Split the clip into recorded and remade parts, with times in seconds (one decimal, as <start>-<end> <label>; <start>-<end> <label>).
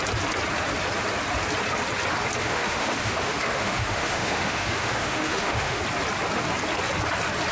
0.0-2.4 recorded; 2.4-5.8 remade; 5.8-7.5 recorded